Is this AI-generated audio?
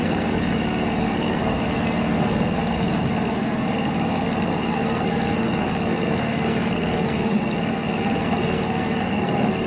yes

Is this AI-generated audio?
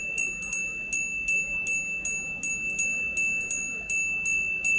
no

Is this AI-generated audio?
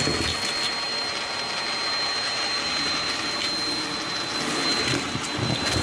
no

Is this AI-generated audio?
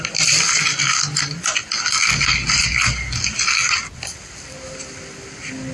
no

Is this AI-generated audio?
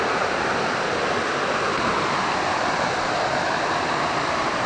no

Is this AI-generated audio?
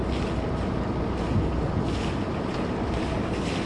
no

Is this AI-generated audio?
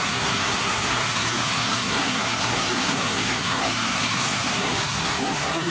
yes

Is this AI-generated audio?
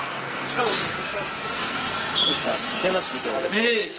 yes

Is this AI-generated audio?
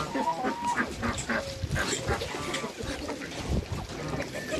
no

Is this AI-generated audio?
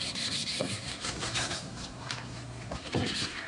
yes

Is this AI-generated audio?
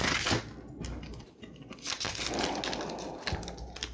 no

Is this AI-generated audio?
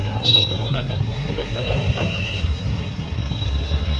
yes